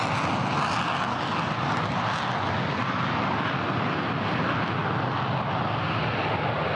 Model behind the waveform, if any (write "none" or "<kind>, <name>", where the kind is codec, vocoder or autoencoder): none